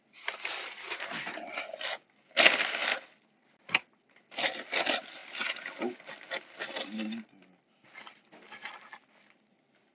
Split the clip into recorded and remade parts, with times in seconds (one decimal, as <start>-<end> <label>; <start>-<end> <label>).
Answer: 0.0-9.9 recorded